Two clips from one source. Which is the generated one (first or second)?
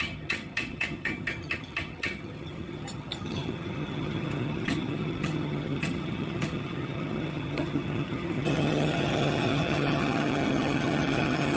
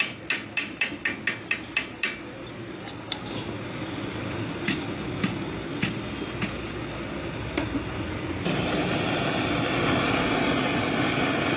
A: first